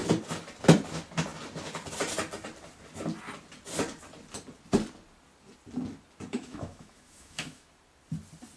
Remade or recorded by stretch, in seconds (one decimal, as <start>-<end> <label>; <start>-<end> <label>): 0.0-6.3 recorded; 6.3-7.7 remade; 7.7-8.6 recorded